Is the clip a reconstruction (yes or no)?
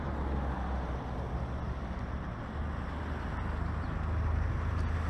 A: no